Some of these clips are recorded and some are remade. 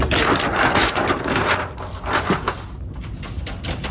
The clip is recorded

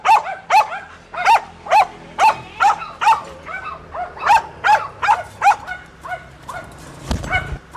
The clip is recorded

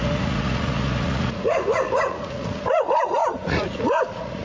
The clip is remade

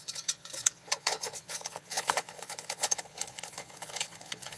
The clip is remade